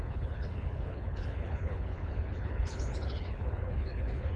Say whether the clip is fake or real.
fake